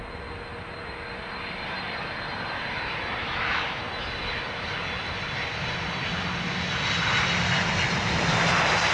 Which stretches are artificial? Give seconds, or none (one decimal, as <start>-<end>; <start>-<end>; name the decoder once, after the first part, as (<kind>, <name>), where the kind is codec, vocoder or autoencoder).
3.2-3.8 (autoencoder, DAC-VAE)